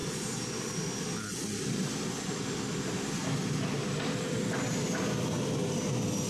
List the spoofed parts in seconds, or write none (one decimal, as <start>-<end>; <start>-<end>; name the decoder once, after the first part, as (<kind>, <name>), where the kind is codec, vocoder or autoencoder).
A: none